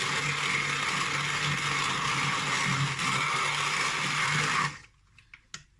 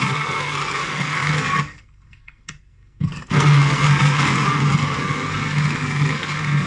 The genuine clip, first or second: first